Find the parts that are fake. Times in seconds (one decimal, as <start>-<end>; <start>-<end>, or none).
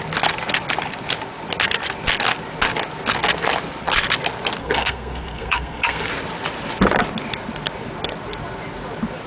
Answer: 4.6-6.1